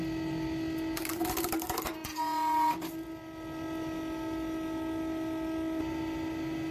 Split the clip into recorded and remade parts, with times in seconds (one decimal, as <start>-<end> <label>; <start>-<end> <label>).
0.0-6.7 recorded